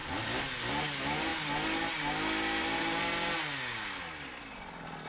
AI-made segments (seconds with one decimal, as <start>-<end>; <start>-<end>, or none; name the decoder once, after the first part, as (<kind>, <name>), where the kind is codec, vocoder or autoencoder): none